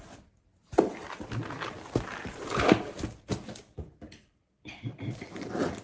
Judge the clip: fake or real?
fake